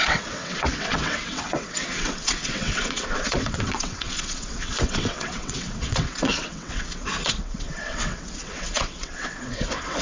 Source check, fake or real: fake